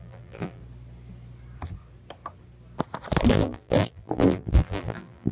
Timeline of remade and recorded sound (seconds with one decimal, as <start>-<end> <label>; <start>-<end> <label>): 0.0-0.6 remade; 0.6-3.3 recorded; 3.3-5.3 remade